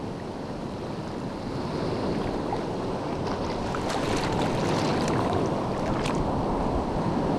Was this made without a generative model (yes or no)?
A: yes